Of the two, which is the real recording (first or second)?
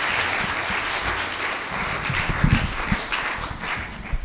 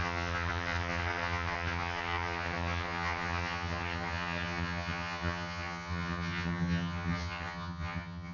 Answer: first